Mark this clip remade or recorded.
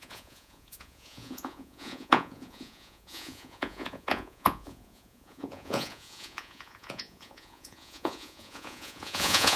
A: remade